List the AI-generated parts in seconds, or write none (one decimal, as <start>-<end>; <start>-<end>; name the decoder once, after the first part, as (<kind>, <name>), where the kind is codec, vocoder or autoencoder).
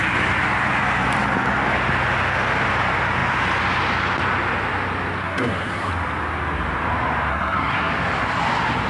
5.2-5.9 (codec, SNAC); 7.3-7.9